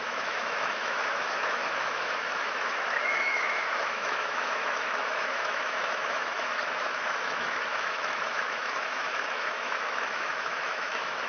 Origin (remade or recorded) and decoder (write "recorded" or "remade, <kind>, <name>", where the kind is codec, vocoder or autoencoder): remade, autoencoder, DAC-VAE